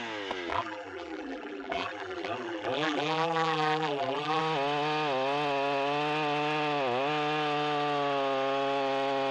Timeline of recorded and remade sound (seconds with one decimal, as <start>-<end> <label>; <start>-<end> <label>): 0.0-0.5 recorded; 0.5-4.4 remade; 4.4-9.3 recorded